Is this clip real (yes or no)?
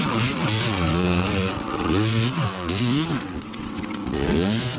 no